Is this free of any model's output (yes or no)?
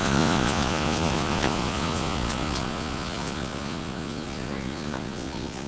no